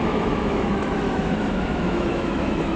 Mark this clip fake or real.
fake